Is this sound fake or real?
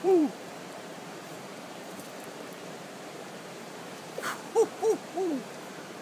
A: fake